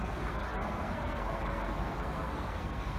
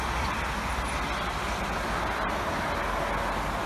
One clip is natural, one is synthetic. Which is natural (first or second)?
second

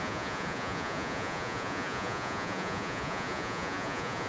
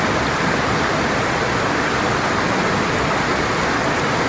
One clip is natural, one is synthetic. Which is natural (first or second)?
second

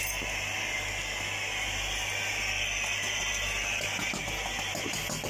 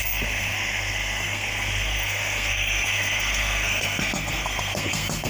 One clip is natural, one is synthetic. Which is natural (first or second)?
first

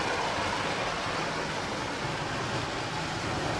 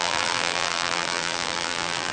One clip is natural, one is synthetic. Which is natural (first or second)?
first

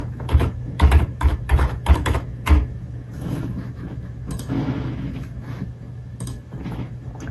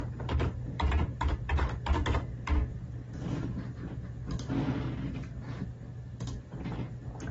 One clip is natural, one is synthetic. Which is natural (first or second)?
second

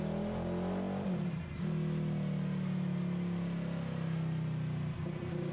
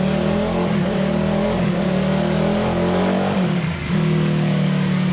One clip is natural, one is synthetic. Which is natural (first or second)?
first